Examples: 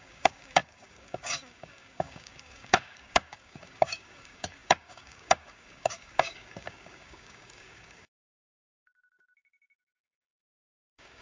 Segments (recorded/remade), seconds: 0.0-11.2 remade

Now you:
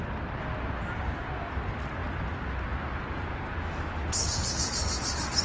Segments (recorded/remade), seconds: 0.0-4.2 recorded; 4.2-4.9 remade; 4.9-5.4 recorded

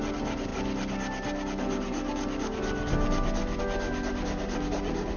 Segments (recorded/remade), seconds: 0.0-5.2 recorded

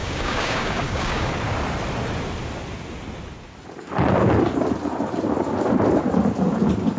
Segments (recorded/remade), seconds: 0.0-1.3 remade; 1.3-7.0 recorded

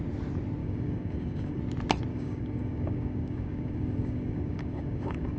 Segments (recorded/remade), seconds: 0.0-0.6 recorded; 0.6-1.6 remade; 1.6-2.1 recorded; 2.1-5.4 remade

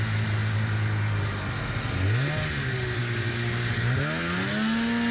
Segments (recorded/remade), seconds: 0.0-3.0 recorded; 3.0-3.7 remade; 3.7-5.1 recorded

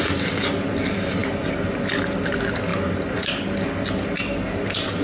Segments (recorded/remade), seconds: 0.0-5.0 recorded

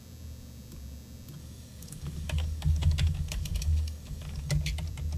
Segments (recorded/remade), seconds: 0.0-1.4 recorded; 1.4-4.5 remade; 4.5-5.2 recorded